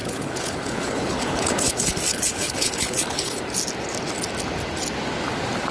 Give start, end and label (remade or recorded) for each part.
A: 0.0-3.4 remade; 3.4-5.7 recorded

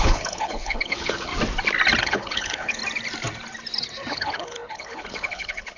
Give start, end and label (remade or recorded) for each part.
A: 0.0-1.3 remade; 1.3-2.0 recorded; 2.0-2.8 remade; 2.8-4.1 recorded; 4.1-5.8 remade

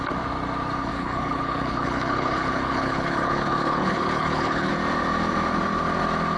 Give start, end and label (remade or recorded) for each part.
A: 0.0-0.9 recorded; 0.9-4.7 remade; 4.7-6.4 recorded

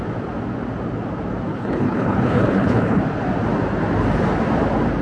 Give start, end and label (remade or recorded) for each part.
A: 0.0-1.5 recorded; 1.5-3.0 remade; 3.0-5.0 recorded

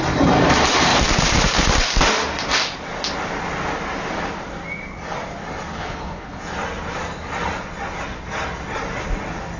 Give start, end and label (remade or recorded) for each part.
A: 0.0-5.7 recorded; 5.7-6.4 remade; 6.4-9.6 recorded

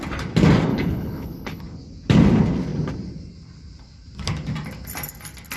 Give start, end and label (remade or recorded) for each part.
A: 0.0-0.7 recorded; 0.7-1.6 remade; 1.6-5.6 recorded

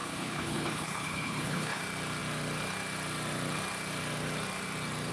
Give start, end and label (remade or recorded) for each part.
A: 0.0-1.8 remade; 1.8-5.1 recorded